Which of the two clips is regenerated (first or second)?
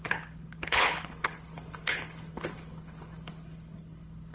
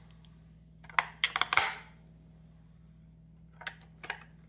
first